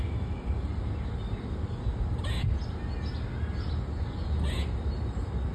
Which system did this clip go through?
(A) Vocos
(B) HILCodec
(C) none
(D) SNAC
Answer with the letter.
C